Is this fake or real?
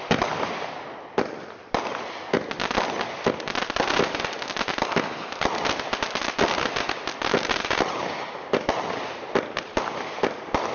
real